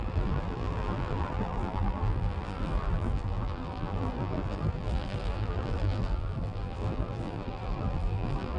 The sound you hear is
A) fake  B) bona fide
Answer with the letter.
A